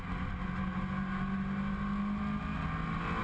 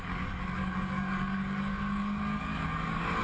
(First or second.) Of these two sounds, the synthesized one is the second